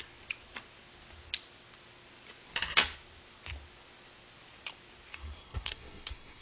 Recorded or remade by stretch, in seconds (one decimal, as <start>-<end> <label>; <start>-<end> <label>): 0.0-5.1 recorded; 5.1-6.4 remade